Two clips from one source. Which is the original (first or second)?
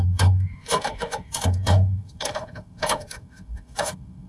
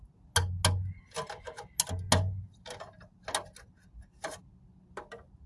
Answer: second